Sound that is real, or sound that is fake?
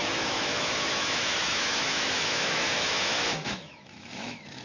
fake